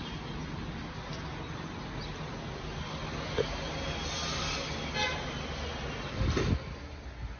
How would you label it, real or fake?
real